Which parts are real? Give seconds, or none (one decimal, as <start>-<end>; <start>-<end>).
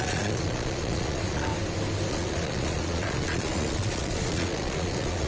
1.5-2.1